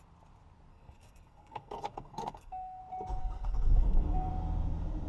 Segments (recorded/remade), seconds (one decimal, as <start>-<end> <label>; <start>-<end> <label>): 0.0-0.7 recorded; 0.7-2.8 remade; 2.8-3.2 recorded; 3.2-4.3 remade; 4.3-5.1 recorded